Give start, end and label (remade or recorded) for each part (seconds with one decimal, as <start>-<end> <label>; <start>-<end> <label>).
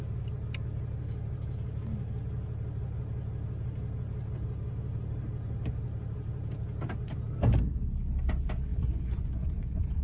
0.0-8.7 recorded; 8.7-10.0 remade